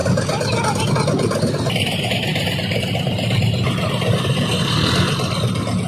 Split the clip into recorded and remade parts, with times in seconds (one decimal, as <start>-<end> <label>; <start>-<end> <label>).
0.0-5.9 recorded